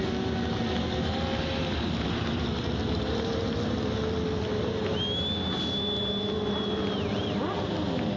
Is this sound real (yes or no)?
yes